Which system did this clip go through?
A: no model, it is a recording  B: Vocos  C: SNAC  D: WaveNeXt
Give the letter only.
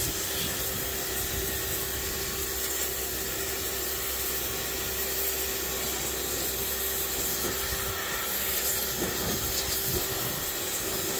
A